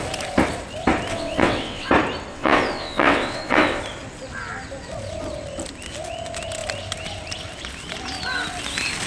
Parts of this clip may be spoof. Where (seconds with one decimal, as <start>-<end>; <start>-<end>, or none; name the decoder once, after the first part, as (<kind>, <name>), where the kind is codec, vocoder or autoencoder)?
1.1-1.9 (vocoder, WaveNeXt); 2.3-3.8